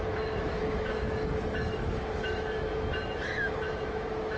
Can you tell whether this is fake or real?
fake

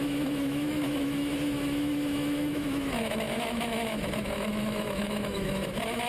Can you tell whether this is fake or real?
fake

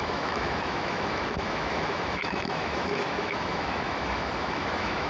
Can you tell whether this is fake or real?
fake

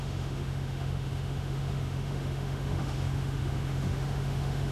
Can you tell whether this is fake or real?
fake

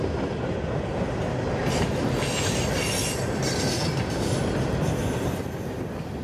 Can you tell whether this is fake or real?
real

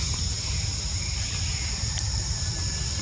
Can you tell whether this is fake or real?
real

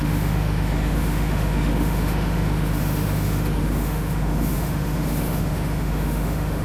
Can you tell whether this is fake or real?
fake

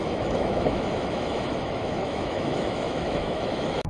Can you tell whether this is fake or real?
fake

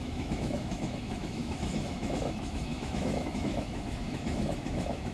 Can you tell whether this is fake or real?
fake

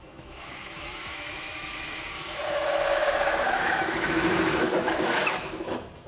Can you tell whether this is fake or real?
fake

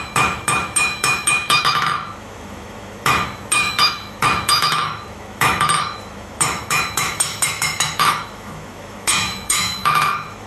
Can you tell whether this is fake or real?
fake